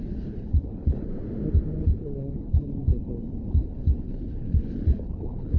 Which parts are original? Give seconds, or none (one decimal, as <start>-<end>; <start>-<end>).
1.1-1.8

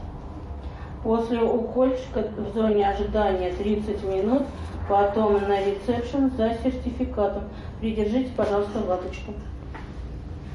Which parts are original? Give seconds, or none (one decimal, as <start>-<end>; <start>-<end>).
0.0-2.0; 3.0-4.2; 4.7-10.5